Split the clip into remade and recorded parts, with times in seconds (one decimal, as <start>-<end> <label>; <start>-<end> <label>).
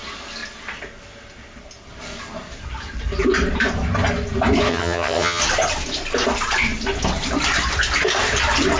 0.0-4.7 recorded; 4.7-5.4 remade; 5.4-8.8 recorded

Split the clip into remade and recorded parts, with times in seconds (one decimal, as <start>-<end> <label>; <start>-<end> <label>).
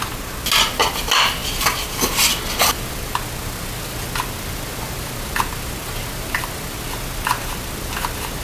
0.0-8.4 recorded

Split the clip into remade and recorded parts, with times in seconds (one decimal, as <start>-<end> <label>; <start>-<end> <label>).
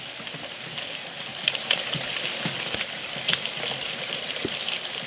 0.0-5.1 recorded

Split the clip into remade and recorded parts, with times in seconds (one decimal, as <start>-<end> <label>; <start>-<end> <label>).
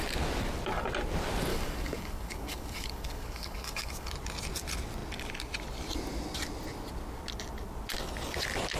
0.0-1.5 recorded; 1.5-4.1 remade; 4.1-8.8 recorded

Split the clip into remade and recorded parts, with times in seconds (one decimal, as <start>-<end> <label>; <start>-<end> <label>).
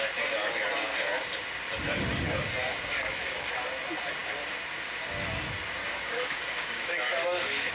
0.0-2.7 recorded; 2.7-3.5 remade; 3.5-5.8 recorded; 5.8-7.7 remade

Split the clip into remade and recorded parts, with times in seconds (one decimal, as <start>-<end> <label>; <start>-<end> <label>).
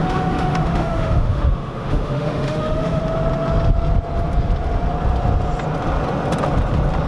0.0-3.0 remade; 3.0-7.1 recorded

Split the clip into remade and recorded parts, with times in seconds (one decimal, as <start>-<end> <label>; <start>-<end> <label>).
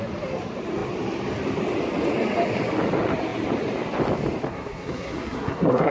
0.0-4.5 recorded; 4.5-5.9 remade